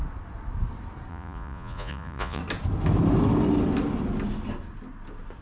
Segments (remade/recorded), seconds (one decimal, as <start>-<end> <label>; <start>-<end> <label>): 0.0-1.1 recorded; 1.1-2.4 remade; 2.4-5.4 recorded